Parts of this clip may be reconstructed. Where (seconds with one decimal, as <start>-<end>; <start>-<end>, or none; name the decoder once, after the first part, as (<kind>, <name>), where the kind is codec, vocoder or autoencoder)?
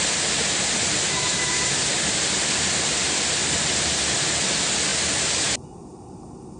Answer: 1.1-1.7 (codec, SNAC)